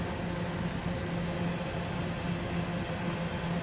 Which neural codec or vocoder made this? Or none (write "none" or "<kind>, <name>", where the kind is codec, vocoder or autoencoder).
none